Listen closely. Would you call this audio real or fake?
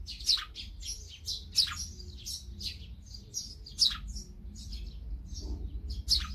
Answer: real